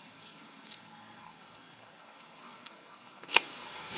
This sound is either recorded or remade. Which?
remade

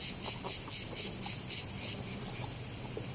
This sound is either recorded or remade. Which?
recorded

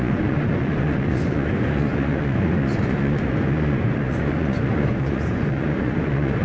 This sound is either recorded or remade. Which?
remade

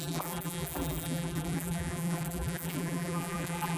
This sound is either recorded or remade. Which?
remade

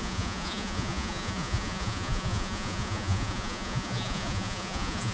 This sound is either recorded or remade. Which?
remade